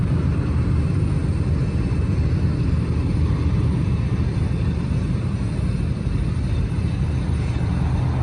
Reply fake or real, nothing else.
real